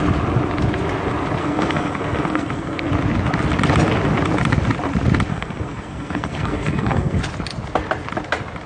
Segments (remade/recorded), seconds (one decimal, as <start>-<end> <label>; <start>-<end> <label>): 0.0-1.4 recorded; 1.4-2.9 remade; 2.9-5.3 recorded; 5.3-7.2 remade; 7.2-8.7 recorded